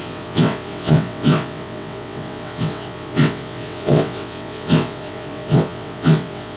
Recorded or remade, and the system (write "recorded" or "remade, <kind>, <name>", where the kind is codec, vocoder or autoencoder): remade, vocoder, WaveNeXt